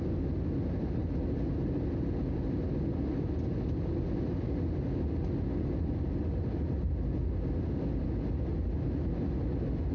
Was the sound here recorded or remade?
recorded